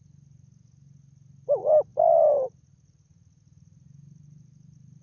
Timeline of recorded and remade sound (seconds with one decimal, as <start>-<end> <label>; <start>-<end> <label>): 0.0-5.0 recorded